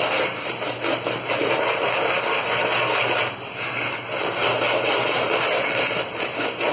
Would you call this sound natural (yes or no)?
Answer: yes